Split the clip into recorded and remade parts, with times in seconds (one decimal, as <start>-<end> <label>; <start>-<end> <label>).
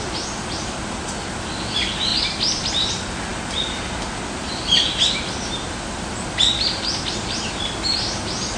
0.0-8.6 recorded